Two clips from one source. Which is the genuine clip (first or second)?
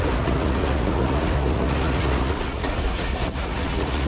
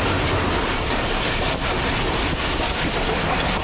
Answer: second